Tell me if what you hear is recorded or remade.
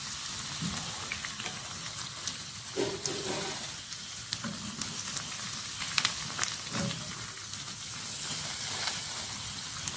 recorded